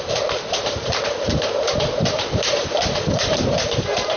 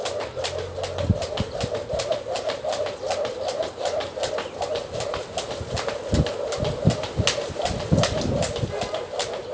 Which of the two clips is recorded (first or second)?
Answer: second